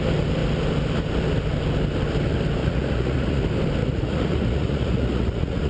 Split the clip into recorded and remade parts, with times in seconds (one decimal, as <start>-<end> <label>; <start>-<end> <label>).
0.0-2.6 recorded; 2.6-3.4 remade; 3.4-3.8 recorded; 3.8-5.7 remade